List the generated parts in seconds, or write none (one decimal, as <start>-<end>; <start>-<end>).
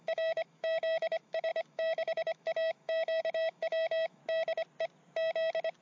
0.0-4.2